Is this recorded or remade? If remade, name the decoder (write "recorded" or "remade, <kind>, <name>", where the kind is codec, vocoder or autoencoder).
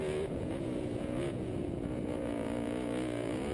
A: remade, vocoder, Vocos